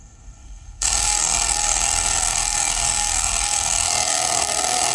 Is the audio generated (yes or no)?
yes